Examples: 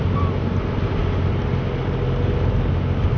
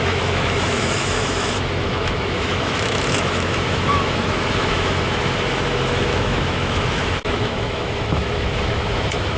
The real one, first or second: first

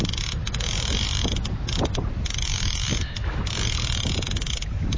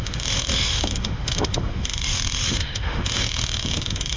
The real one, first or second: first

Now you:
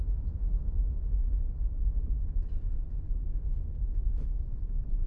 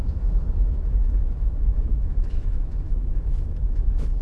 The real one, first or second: first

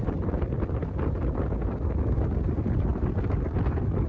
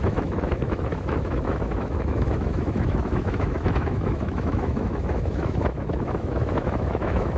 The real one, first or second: first